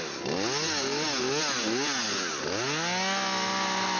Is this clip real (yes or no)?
yes